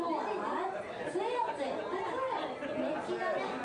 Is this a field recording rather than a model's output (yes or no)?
yes